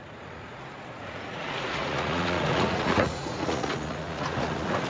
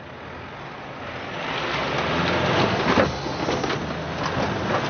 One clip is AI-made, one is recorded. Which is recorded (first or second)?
second